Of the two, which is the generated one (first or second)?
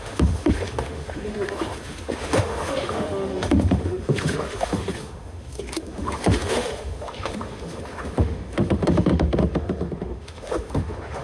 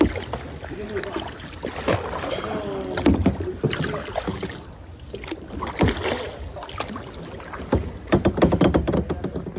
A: first